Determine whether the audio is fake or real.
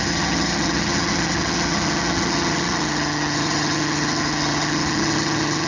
fake